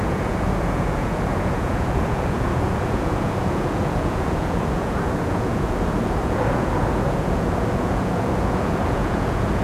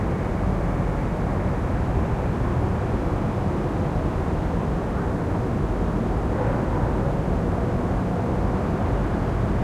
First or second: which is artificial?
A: first